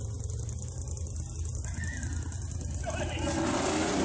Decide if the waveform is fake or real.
real